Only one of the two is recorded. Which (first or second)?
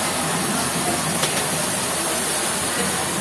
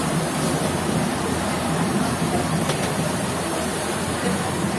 first